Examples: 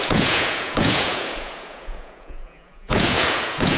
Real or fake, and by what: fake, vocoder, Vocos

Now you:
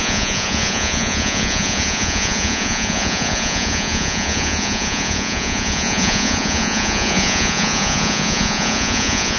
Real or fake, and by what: fake, vocoder, Vocos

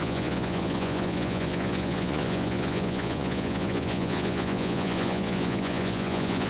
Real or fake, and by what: fake, vocoder, Vocos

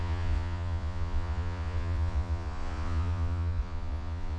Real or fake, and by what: fake, vocoder, Vocos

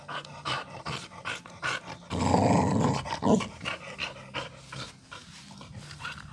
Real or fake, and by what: real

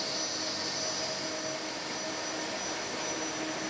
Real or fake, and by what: real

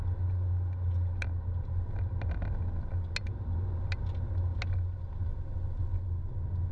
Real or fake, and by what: real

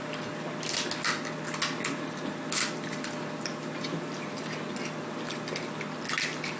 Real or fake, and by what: real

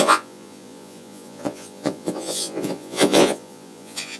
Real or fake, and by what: fake, vocoder, Vocos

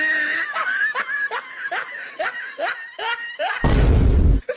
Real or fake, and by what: real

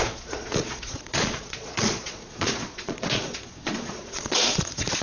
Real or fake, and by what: fake, vocoder, Vocos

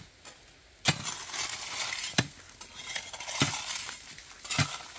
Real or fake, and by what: real